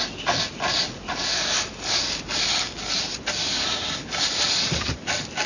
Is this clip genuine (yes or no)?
yes